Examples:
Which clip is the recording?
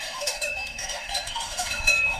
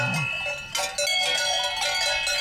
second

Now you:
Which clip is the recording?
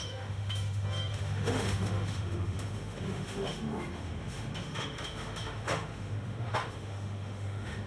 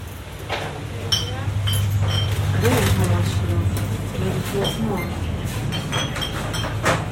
second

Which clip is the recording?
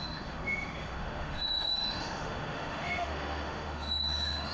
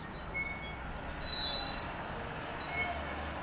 second